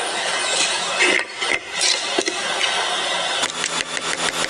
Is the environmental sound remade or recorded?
recorded